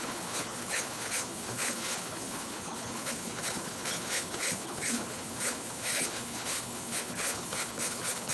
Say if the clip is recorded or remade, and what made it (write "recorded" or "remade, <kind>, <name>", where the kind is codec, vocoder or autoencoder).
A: remade, codec, HILCodec